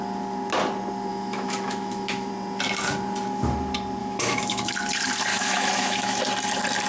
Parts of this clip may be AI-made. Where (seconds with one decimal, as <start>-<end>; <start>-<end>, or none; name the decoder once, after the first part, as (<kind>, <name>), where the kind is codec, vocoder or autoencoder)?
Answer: 1.1-2.3 (autoencoder, DAC-VAE); 4.0-4.7; 5.3-6.2